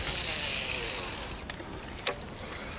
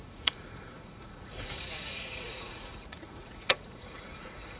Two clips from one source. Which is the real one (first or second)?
first